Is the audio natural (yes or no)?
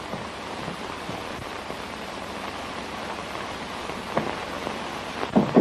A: yes